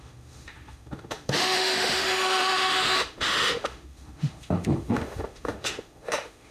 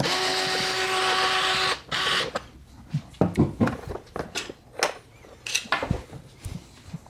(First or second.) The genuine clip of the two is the second